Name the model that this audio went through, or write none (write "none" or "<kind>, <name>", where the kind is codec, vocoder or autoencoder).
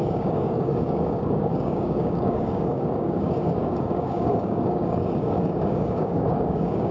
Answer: codec, DAC